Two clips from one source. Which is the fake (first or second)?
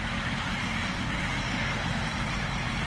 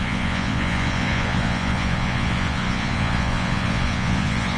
second